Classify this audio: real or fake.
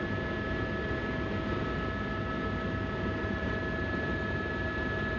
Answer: real